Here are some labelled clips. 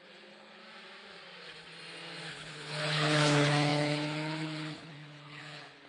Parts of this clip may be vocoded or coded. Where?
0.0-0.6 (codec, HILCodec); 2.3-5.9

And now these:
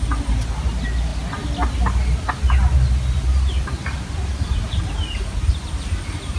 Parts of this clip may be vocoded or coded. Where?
none

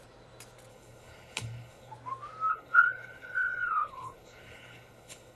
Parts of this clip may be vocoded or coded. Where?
0.7-1.9 (codec, HILCodec); 2.5-5.4

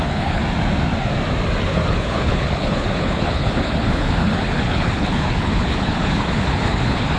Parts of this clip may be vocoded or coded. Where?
0.0-0.4 (codec, HILCodec); 1.6-7.2